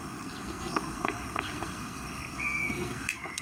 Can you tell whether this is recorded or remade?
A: remade